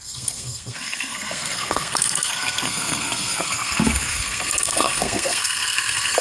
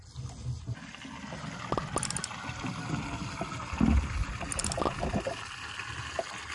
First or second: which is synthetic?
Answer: first